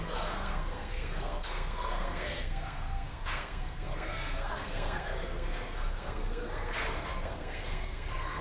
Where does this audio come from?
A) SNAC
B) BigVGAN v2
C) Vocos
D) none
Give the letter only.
A